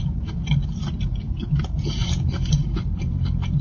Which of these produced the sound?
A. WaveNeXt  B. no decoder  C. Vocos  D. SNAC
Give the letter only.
B